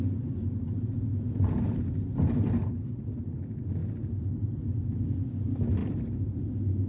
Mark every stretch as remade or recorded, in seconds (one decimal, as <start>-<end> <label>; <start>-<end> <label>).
0.0-6.9 recorded